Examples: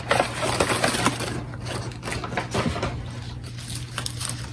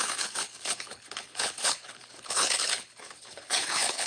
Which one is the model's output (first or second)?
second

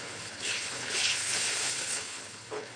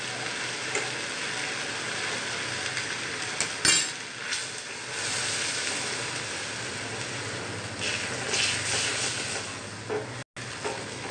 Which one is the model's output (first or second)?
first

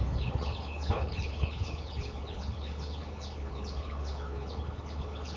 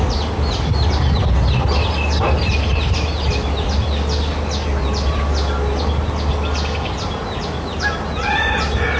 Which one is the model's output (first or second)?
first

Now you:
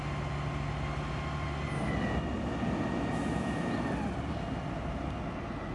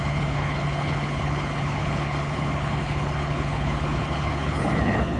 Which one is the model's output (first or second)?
second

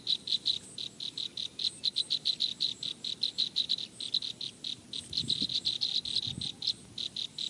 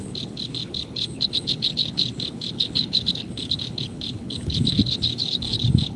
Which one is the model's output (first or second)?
second